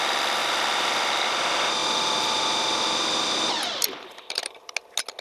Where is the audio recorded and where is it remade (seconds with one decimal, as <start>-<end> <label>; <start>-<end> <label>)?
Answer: 0.0-1.8 recorded; 1.8-4.7 remade; 4.7-5.2 recorded